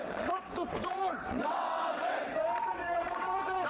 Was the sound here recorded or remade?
remade